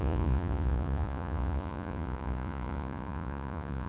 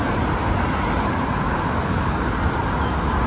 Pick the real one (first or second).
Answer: second